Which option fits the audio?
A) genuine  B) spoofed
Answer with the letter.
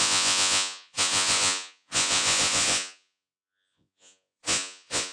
B